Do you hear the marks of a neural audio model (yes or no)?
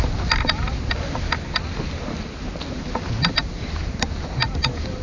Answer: no